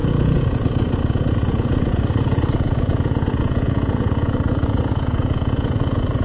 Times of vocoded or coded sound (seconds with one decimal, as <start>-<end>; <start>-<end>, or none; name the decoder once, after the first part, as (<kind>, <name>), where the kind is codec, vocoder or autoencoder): 0.0-6.2 (vocoder, Vocos)